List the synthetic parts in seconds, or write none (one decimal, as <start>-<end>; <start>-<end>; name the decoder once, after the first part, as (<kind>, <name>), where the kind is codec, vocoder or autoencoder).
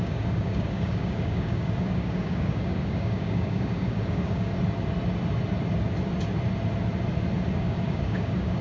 0.0-4.5 (codec, DAC); 7.5-8.6